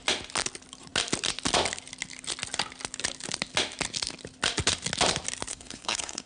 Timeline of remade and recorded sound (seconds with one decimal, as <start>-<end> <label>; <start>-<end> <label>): 0.0-5.5 recorded; 5.5-6.3 remade